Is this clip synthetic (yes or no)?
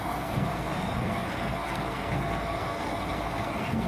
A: yes